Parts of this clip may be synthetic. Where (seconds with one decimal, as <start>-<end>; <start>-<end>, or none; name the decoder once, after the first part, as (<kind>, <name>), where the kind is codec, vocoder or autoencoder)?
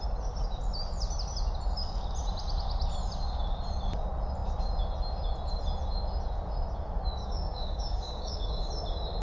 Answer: 7.2-8.7 (codec, DAC)